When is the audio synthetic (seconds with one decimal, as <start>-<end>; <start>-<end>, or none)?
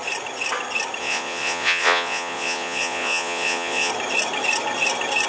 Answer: 1.0-3.9